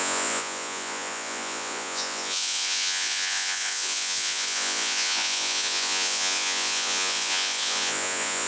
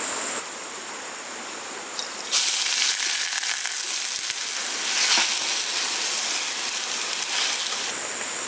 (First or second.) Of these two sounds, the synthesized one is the first